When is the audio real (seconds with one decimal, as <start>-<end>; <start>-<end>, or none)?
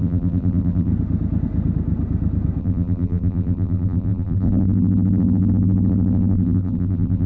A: 0.9-2.6